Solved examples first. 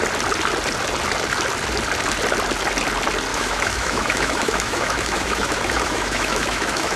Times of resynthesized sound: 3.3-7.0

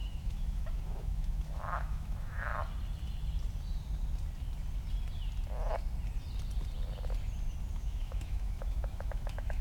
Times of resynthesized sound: 0.0-2.5; 7.7-9.6

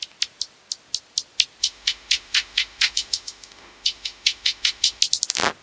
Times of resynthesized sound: 1.6-5.0

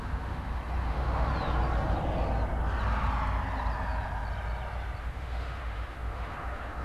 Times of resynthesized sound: 0.0-1.3; 5.0-6.8

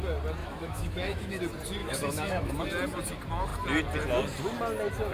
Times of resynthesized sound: 0.4-1.4; 1.8-2.5

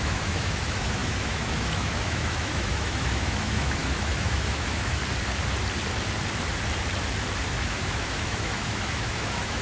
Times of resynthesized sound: 0.0-5.0; 7.6-9.6

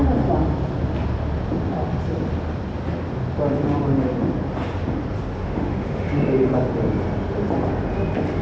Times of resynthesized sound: 5.4-6.1

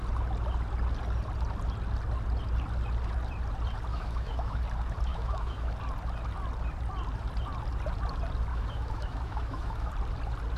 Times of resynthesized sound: 3.9-4.6; 5.1-5.7; 8.5-9.9